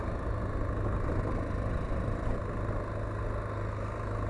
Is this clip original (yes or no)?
yes